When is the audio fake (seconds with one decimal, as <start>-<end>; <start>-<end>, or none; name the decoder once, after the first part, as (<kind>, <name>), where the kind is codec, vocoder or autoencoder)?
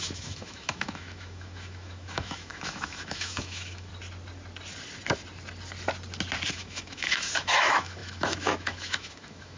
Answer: 0.0-3.9 (autoencoder, DAC-VAE); 6.5-9.6